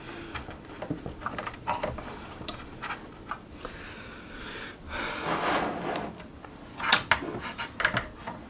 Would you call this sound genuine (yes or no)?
yes